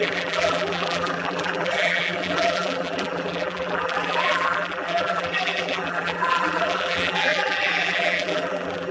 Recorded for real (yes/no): no